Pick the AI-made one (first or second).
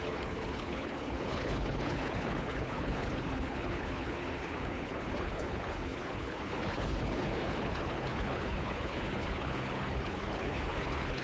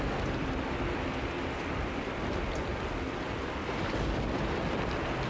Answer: first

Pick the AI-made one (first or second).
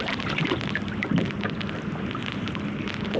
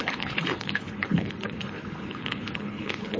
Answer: second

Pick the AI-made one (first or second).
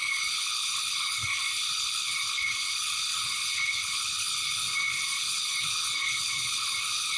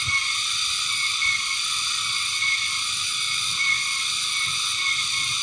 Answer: first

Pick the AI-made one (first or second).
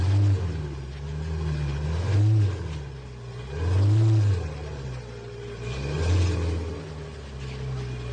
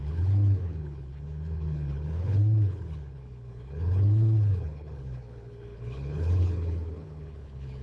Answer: second